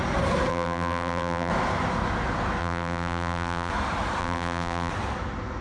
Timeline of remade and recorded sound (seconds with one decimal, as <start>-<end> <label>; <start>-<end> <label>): 0.0-0.5 recorded; 0.5-1.5 remade; 1.5-2.6 recorded; 2.6-3.7 remade; 3.7-4.2 recorded; 4.2-4.9 remade; 4.9-5.6 recorded

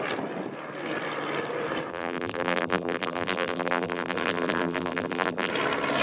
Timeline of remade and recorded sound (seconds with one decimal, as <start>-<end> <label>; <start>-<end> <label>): 0.0-1.9 recorded; 1.9-5.5 remade; 5.5-6.0 recorded

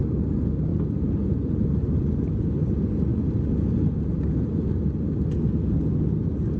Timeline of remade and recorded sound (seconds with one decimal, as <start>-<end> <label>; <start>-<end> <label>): 0.0-0.7 recorded; 0.7-2.1 remade; 2.1-6.6 recorded

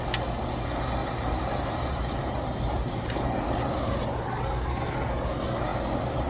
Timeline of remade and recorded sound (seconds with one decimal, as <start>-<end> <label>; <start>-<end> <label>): 0.0-1.0 recorded; 1.0-4.2 remade; 4.2-6.3 recorded

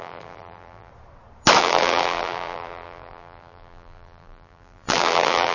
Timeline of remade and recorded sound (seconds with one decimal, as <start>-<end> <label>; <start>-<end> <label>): 0.0-0.9 remade; 0.9-1.6 recorded; 1.6-5.5 remade

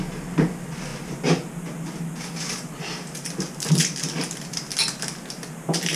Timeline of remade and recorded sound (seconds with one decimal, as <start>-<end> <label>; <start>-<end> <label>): 0.0-6.0 recorded

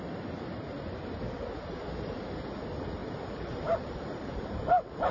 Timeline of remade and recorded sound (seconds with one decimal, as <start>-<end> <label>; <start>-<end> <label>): 0.0-3.0 recorded; 3.0-5.1 remade

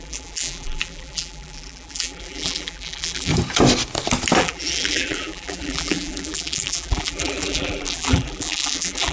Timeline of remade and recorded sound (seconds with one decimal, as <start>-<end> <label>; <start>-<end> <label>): 0.0-3.3 remade; 3.3-4.4 recorded; 4.4-9.1 remade